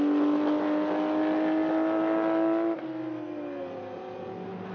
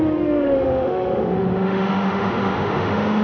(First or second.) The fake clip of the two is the second